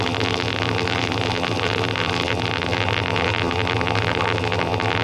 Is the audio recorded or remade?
remade